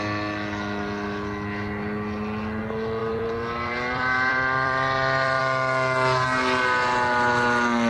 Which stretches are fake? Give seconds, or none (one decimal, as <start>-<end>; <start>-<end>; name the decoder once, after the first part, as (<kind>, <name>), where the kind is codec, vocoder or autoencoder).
3.0-5.4 (vocoder, BigVGAN v2)